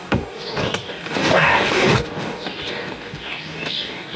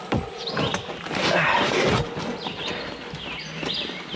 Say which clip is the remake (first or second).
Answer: first